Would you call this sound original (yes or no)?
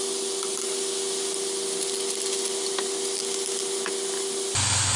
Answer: yes